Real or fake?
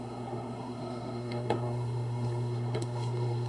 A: fake